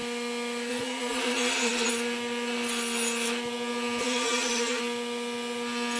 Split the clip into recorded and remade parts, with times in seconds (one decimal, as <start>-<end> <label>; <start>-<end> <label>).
0.0-0.7 recorded; 0.7-1.9 remade; 1.9-4.0 recorded; 4.0-4.8 remade; 4.8-6.0 recorded